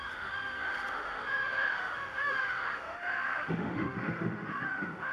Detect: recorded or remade remade